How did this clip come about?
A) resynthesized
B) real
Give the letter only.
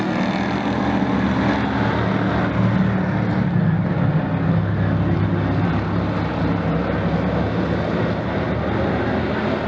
B